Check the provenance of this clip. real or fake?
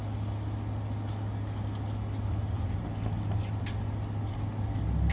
real